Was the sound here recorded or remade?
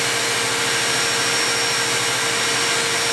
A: recorded